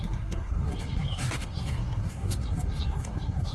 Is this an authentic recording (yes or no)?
no